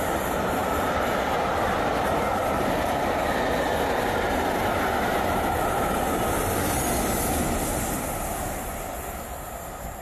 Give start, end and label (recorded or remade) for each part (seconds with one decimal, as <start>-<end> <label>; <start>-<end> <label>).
0.0-10.0 recorded

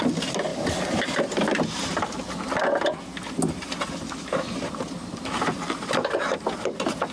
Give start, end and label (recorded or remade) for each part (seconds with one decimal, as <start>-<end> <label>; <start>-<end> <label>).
0.0-7.1 recorded

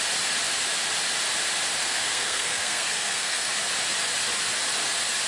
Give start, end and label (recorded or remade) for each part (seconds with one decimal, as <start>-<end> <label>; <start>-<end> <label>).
0.0-1.8 recorded; 1.8-3.5 remade; 3.5-5.3 recorded

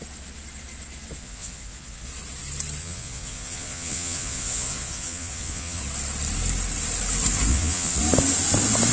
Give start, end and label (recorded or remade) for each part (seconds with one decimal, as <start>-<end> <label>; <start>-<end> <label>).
0.0-1.2 recorded; 1.2-2.1 remade; 2.1-2.8 recorded; 2.8-5.8 remade; 5.8-7.5 recorded; 7.5-8.0 remade; 8.0-8.9 recorded